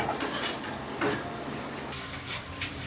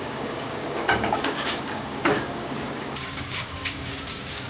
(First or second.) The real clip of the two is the first